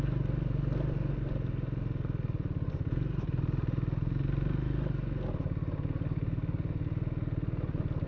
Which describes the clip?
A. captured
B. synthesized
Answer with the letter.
A